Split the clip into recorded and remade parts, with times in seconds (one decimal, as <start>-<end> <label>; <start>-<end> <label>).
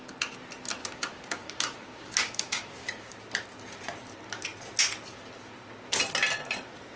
0.0-0.8 recorded; 0.8-3.1 remade; 3.1-7.0 recorded